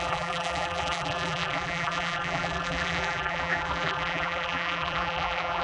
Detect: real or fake fake